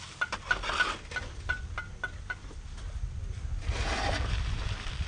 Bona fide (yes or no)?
yes